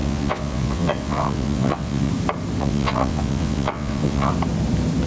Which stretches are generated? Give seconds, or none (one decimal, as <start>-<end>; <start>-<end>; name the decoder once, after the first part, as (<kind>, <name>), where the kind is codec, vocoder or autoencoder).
0.0-2.1 (vocoder, WaveNeXt); 2.6-4.3